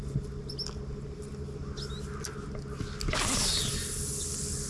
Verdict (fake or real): real